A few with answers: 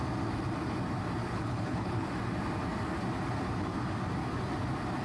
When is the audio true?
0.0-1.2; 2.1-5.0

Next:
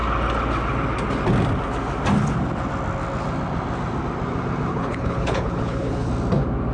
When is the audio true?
0.0-4.7; 6.1-6.7

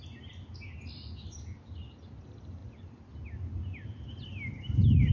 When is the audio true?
0.0-5.1

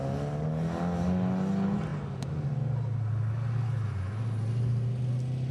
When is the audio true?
0.0-5.5